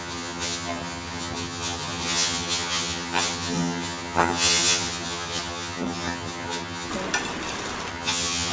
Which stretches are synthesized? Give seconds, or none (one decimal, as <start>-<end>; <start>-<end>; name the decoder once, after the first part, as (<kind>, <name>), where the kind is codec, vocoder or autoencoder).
0.0-6.9 (vocoder, HiFi-GAN); 7.9-8.5